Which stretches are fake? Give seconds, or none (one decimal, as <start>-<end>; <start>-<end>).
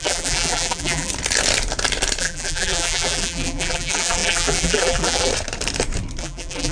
0.0-1.1; 2.2-5.3; 6.2-6.7